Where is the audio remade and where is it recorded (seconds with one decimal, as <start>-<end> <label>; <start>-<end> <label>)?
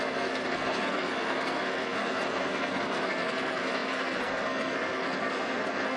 0.0-6.0 remade